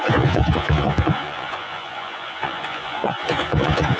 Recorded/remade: remade